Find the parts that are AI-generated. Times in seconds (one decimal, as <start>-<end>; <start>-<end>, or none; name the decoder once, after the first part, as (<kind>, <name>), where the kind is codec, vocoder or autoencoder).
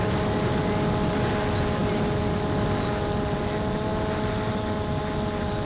none